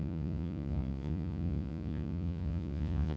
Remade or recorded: remade